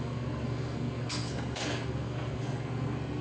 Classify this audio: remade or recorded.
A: remade